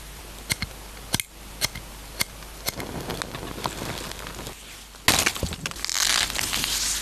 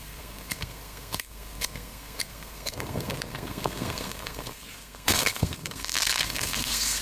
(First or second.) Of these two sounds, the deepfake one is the second